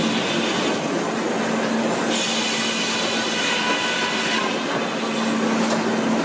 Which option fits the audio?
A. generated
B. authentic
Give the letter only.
B